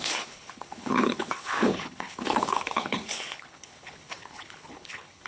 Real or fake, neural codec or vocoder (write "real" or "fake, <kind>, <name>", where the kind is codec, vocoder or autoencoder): fake, codec, HILCodec